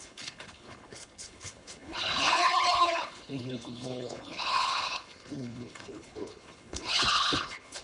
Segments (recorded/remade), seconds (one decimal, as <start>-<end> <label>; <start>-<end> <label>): 0.0-7.8 remade